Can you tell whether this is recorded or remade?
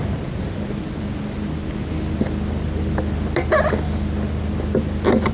recorded